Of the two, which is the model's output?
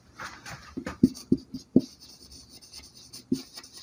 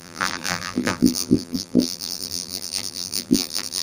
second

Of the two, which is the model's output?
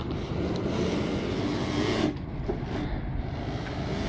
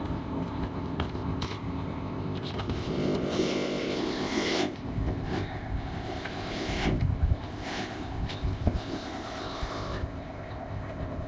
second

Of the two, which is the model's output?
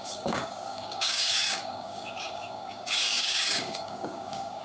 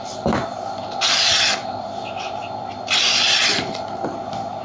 first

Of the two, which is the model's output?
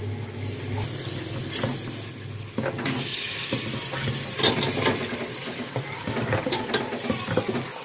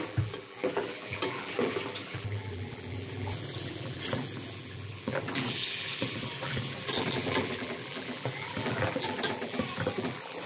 second